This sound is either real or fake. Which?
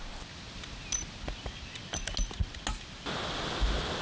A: real